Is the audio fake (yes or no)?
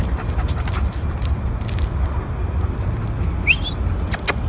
no